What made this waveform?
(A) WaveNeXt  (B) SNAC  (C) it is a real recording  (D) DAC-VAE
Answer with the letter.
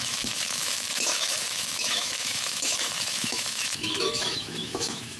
D